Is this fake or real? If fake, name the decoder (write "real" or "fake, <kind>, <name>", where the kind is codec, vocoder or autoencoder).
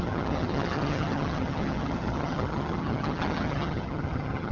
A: fake, vocoder, HiFi-GAN